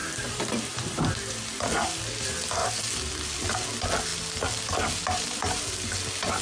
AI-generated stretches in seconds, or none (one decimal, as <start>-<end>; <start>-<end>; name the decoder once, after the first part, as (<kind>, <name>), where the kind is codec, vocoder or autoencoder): 0.0-0.7 (vocoder, BigVGAN v2); 2.6-3.4